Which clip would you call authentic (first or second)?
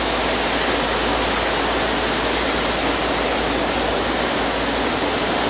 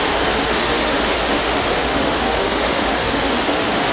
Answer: first